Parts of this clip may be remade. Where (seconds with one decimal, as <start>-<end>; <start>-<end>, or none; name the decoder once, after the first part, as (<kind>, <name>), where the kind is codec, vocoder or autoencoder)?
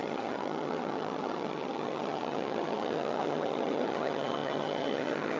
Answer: 0.0-5.4 (vocoder, HiFi-GAN)